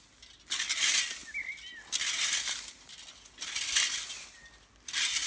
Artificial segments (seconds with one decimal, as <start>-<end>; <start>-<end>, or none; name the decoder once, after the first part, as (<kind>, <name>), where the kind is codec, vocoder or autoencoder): none